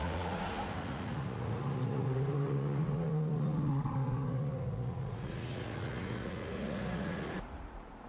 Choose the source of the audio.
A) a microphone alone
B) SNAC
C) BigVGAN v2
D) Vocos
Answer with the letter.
D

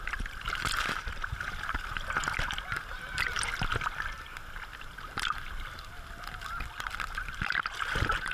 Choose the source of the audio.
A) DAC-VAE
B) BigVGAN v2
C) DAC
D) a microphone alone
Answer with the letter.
B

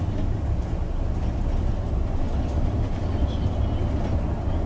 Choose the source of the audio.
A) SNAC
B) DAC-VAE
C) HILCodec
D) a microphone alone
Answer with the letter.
D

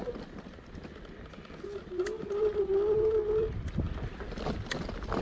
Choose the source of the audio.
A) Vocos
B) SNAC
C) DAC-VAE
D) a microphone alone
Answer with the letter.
D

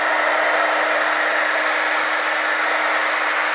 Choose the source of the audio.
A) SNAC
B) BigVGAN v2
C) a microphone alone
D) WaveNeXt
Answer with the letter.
C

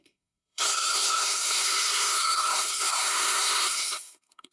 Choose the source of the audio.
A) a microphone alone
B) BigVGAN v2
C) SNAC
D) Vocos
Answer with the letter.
C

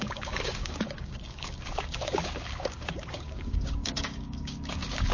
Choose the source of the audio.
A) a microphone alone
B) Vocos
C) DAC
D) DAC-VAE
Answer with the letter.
C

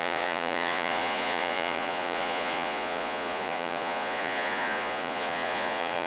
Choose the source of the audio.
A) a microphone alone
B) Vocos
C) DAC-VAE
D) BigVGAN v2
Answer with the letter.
B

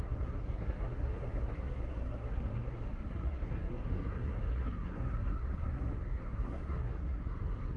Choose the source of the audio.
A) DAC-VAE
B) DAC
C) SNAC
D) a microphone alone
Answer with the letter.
C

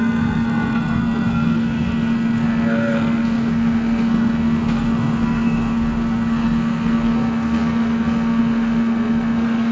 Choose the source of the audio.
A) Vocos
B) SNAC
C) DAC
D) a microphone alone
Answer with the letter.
B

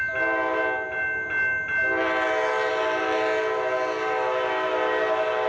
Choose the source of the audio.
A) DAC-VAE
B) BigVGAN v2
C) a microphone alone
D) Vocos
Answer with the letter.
C